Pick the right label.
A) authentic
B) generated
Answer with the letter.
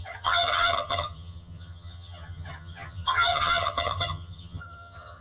B